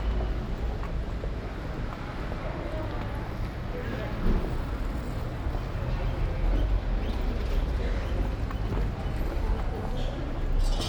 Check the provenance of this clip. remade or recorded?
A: recorded